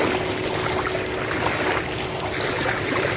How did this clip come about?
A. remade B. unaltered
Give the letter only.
B